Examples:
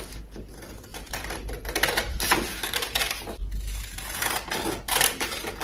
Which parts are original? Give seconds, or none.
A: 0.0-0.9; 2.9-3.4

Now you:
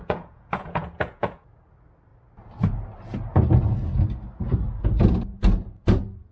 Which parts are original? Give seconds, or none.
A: 1.5-6.3

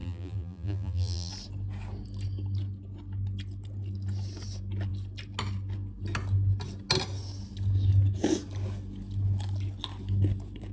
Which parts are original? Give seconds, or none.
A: 1.3-10.7

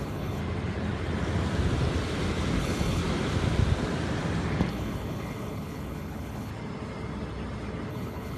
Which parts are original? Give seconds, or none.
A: 0.4-2.6; 3.0-4.7; 6.5-7.9

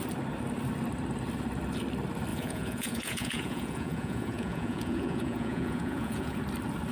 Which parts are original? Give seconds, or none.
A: 0.0-2.3; 6.4-6.9

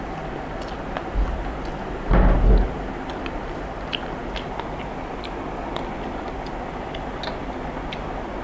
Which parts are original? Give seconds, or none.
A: 0.0-8.4